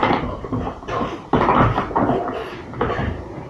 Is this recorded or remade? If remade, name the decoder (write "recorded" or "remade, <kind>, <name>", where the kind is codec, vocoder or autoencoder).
remade, vocoder, BigVGAN v2